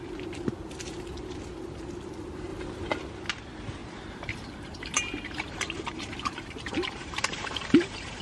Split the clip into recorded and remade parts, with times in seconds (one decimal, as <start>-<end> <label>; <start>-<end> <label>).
0.0-3.8 recorded; 3.8-8.2 remade